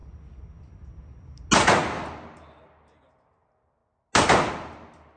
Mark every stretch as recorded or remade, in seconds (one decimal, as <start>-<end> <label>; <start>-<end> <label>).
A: 0.0-5.2 recorded